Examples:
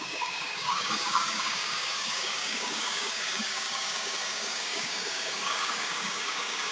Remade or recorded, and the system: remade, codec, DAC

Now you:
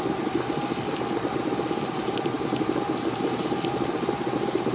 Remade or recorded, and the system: recorded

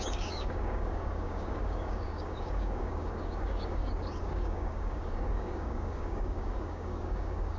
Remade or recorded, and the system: remade, codec, DAC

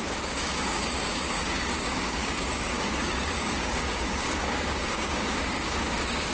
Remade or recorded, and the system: remade, codec, DAC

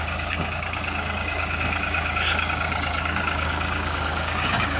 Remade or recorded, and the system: remade, codec, DAC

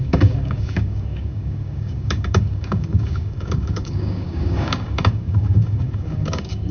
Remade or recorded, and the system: remade, codec, DAC